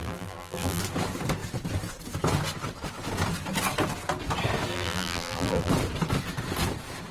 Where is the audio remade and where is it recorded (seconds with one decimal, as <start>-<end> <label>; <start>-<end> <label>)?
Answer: 0.0-0.8 remade; 0.8-4.7 recorded; 4.7-5.7 remade; 5.7-7.1 recorded